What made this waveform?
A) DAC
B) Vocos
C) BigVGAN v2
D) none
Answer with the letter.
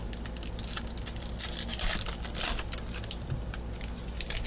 D